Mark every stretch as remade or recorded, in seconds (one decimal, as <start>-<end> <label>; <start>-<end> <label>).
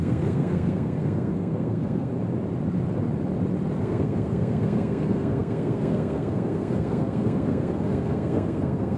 0.0-2.1 remade; 2.1-3.8 recorded; 3.8-9.0 remade